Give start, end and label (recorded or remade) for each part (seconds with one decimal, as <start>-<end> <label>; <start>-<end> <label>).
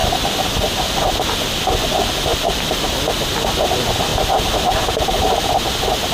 0.0-1.8 remade; 1.8-2.3 recorded; 2.3-3.5 remade; 3.5-6.1 recorded